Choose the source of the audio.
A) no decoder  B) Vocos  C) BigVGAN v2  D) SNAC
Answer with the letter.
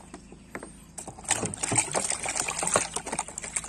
A